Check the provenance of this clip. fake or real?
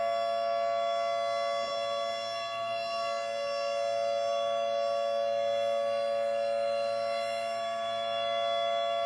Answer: real